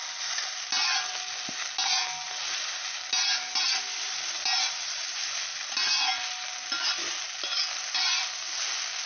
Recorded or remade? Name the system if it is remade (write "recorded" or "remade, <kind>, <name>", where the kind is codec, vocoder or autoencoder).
recorded